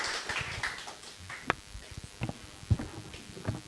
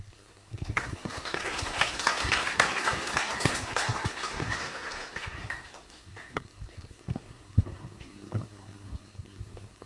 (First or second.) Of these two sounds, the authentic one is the first